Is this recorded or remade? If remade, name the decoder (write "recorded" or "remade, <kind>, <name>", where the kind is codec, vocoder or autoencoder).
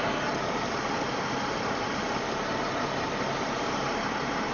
remade, vocoder, BigVGAN v2